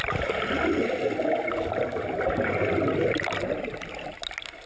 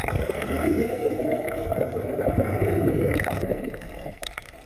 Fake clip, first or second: second